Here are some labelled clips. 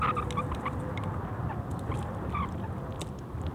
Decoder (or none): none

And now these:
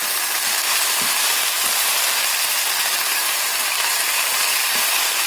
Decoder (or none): vocoder, BigVGAN v2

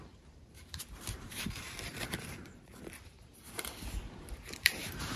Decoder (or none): vocoder, BigVGAN v2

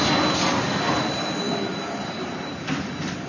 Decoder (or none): vocoder, BigVGAN v2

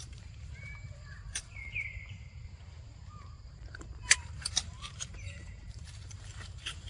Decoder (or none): vocoder, BigVGAN v2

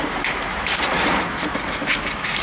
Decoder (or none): vocoder, BigVGAN v2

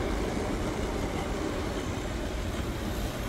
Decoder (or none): vocoder, BigVGAN v2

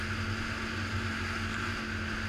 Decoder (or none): none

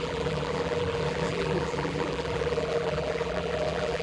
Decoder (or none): vocoder, BigVGAN v2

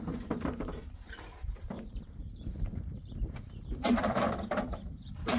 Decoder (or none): vocoder, BigVGAN v2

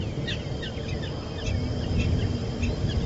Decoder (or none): none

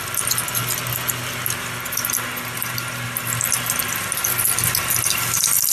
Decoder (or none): none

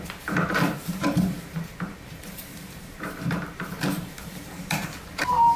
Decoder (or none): vocoder, BigVGAN v2